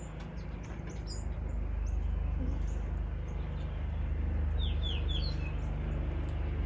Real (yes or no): yes